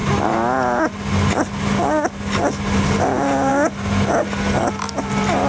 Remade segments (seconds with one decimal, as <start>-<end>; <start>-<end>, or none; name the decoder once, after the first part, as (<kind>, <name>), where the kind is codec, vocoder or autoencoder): none